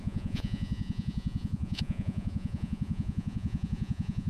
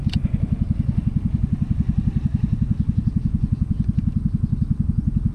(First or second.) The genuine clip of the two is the second